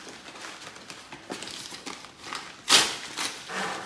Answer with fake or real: real